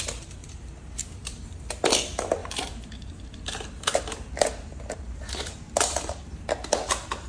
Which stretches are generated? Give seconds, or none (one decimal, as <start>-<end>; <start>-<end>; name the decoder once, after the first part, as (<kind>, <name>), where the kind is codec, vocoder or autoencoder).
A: 0.4-1.5 (vocoder, BigVGAN v2); 2.4-6.4